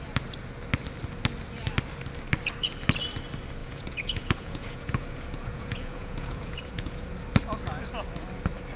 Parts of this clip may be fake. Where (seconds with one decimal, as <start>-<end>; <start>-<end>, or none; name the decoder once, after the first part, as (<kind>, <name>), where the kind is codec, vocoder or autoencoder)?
3.6-7.1 (vocoder, Vocos)